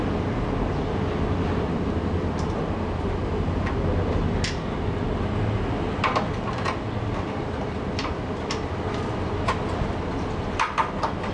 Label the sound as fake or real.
real